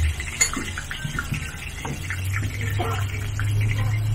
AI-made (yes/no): no